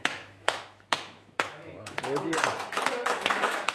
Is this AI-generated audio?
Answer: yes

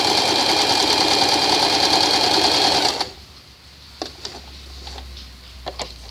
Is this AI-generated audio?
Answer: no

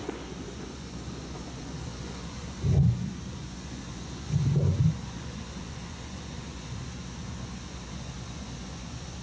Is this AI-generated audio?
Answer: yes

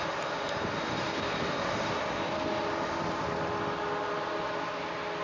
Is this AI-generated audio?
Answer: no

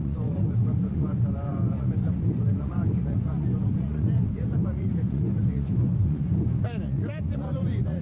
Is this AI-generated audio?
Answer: yes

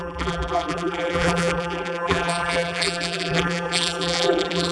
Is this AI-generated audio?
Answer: yes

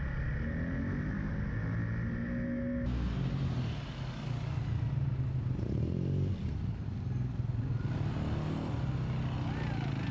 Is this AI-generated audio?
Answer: no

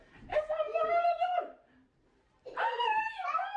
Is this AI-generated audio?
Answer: yes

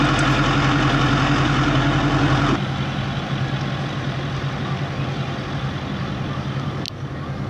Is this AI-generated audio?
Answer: no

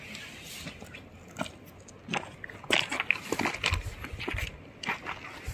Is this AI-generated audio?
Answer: no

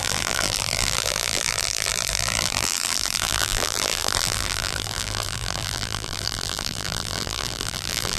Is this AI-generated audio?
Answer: yes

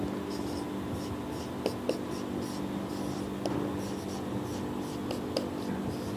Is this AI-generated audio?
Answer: no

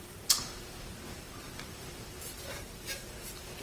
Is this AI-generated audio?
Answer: yes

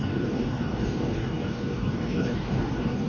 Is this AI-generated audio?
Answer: yes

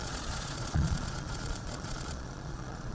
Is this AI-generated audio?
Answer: yes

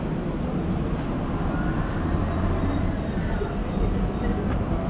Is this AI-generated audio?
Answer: no